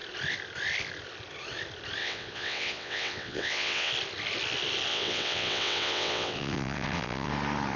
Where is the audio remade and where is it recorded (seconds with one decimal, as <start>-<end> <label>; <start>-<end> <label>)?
0.0-2.0 recorded; 2.0-3.9 remade; 3.9-4.9 recorded; 4.9-7.3 remade; 7.3-7.8 recorded